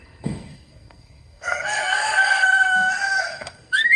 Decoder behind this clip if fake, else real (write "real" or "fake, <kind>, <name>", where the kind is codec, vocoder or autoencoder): fake, codec, SNAC